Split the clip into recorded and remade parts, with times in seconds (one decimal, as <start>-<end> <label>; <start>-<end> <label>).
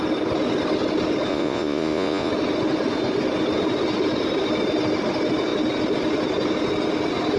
0.0-1.3 recorded; 1.3-2.3 remade; 2.3-7.4 recorded